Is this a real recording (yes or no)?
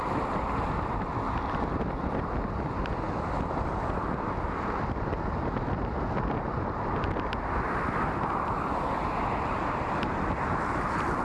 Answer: yes